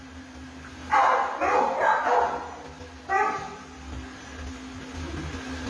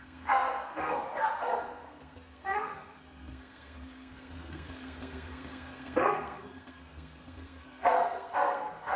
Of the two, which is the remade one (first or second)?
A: second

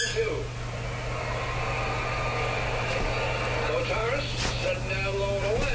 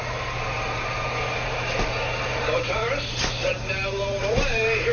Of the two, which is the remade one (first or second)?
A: second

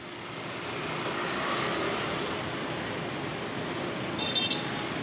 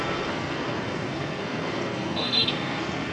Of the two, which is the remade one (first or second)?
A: second